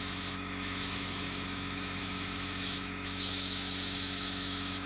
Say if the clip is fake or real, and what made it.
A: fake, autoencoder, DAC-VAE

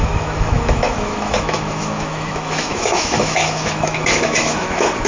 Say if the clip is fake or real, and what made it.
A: fake, autoencoder, DAC-VAE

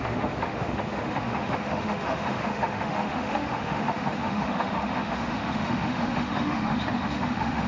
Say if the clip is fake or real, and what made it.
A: fake, autoencoder, DAC-VAE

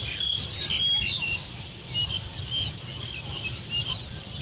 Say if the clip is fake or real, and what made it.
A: real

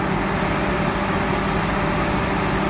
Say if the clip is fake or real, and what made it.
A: real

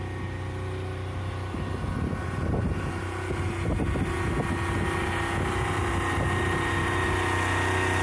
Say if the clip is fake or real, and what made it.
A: real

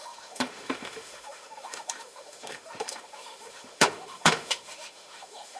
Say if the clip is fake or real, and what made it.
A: fake, autoencoder, DAC-VAE